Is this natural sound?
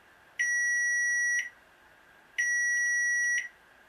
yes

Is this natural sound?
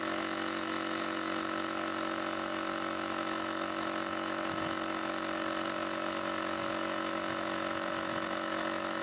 no